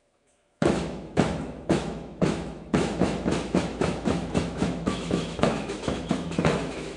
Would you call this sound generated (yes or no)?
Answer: yes